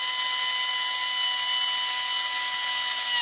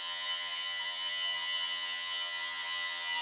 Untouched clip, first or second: first